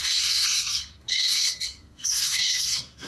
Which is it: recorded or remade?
remade